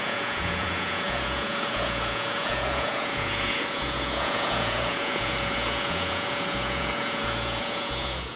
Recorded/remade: remade